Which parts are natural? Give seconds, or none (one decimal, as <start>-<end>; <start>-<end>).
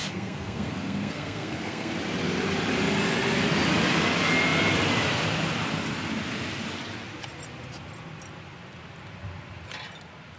1.9-10.4